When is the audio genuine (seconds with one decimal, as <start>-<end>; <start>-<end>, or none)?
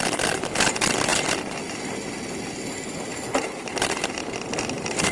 0.0-5.1